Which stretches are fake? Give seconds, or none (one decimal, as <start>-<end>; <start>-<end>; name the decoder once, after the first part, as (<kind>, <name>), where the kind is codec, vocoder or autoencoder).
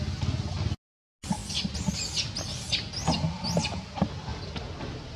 none